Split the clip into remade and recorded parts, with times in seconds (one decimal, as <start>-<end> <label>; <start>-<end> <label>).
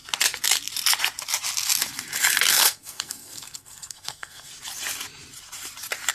0.0-2.5 recorded; 2.5-4.5 remade; 4.5-6.1 recorded